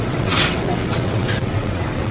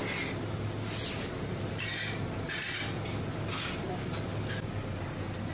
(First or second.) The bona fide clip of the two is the second